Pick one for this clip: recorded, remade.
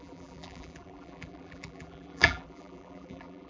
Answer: remade